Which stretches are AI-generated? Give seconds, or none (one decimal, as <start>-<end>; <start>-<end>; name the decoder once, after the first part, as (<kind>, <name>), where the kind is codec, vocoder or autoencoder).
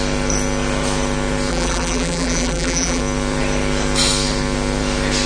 1.5-3.0 (vocoder, BigVGAN v2)